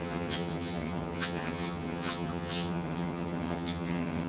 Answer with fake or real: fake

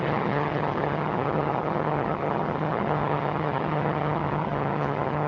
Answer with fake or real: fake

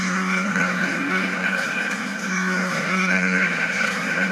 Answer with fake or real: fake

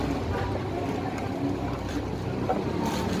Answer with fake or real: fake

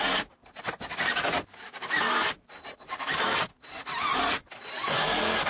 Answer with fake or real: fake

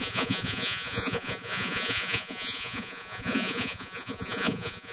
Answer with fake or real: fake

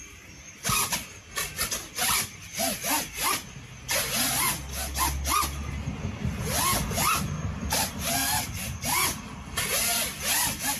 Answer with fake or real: real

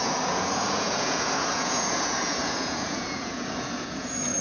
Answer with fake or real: fake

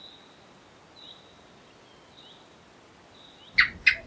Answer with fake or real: real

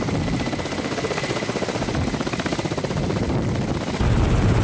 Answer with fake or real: real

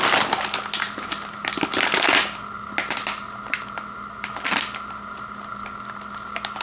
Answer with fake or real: real